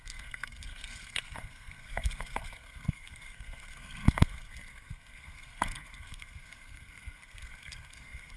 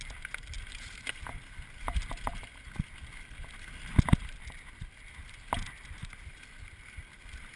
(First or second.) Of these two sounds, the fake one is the first